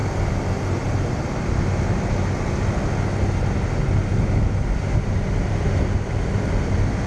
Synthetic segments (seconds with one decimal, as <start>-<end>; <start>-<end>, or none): none